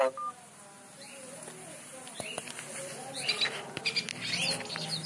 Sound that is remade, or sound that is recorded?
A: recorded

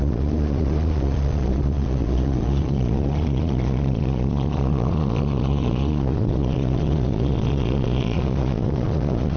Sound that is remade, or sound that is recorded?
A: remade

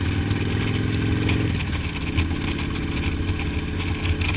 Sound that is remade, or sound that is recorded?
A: recorded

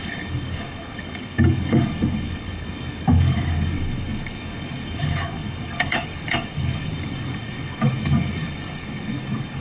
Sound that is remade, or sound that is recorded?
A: remade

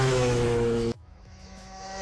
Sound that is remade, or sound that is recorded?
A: remade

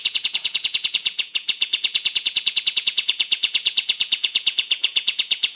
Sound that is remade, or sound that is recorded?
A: remade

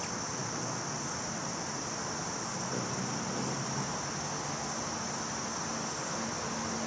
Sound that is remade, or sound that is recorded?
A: recorded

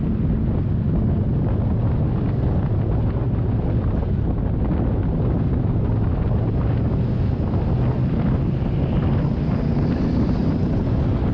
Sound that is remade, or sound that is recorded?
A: recorded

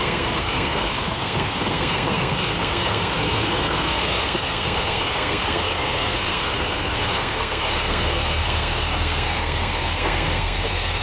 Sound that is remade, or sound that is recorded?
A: remade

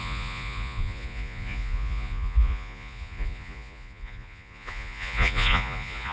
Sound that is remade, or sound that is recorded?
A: remade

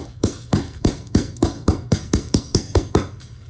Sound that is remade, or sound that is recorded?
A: remade